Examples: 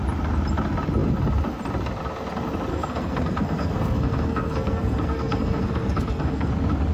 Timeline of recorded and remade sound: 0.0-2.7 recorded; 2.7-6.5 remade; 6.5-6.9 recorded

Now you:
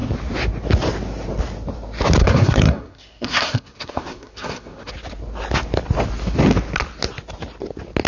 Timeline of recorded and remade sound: 0.0-2.2 recorded; 2.2-4.9 remade; 4.9-8.1 recorded

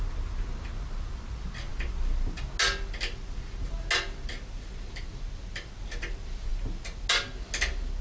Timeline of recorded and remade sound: 0.0-8.0 recorded